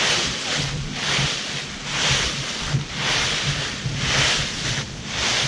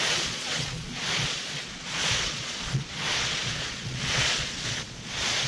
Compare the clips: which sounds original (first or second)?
first